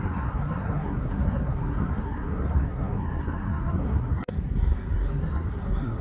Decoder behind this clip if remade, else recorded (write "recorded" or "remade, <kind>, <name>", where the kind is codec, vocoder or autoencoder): remade, codec, SNAC